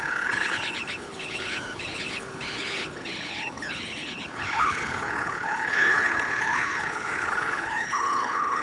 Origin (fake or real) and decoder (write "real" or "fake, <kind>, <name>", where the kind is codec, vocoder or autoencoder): fake, codec, HILCodec